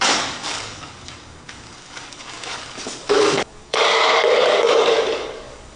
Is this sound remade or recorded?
remade